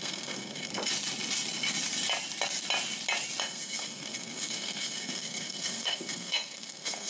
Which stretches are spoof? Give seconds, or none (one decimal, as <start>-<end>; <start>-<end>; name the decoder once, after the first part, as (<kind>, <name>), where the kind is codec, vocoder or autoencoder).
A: 0.0-0.7 (codec, SNAC); 3.4-7.1